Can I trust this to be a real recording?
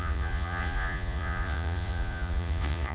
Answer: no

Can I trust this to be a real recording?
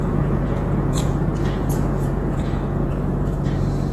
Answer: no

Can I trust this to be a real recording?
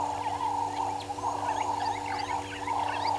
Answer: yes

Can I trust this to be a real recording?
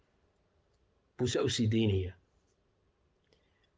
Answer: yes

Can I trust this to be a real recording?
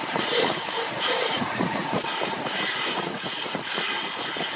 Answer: no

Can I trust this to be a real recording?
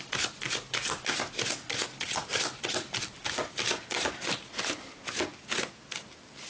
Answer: yes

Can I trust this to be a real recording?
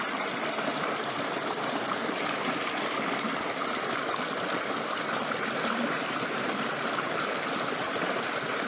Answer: yes